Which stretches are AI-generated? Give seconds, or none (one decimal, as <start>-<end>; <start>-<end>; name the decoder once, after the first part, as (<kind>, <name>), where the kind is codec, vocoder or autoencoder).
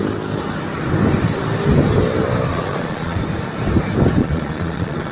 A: 2.5-3.2 (vocoder, Vocos); 4.2-5.1